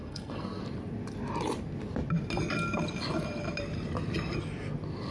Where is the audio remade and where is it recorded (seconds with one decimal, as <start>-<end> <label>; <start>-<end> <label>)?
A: 0.0-0.6 remade; 0.6-5.1 recorded

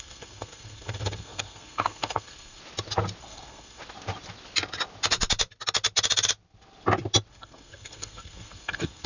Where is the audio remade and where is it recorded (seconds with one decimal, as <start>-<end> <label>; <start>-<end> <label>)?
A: 0.0-2.6 remade; 2.6-3.2 recorded; 3.2-3.8 remade; 3.8-7.3 recorded; 7.3-9.1 remade

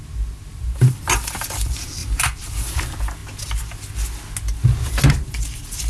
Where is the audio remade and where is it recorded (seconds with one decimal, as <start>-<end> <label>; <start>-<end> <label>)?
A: 0.0-0.5 recorded; 0.5-1.0 remade; 1.0-2.0 recorded; 2.0-2.8 remade; 2.8-5.9 recorded

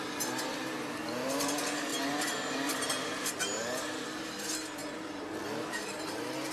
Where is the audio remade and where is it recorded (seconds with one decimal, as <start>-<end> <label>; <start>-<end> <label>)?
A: 0.0-1.9 remade; 1.9-3.0 recorded; 3.0-6.5 remade

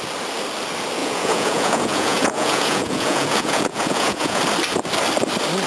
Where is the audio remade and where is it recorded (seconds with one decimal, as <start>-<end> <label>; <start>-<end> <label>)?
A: 0.0-1.0 recorded; 1.0-4.4 remade; 4.4-5.7 recorded

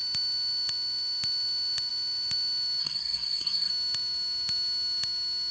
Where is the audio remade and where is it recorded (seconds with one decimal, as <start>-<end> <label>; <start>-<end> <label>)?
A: 0.0-2.8 recorded; 2.8-3.7 remade; 3.7-5.5 recorded

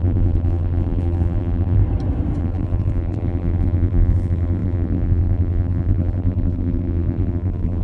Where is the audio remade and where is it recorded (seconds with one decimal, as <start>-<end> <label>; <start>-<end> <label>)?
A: 0.0-1.8 remade; 1.8-2.4 recorded; 2.4-7.8 remade